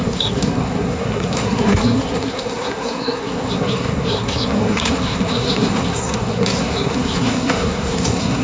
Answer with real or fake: fake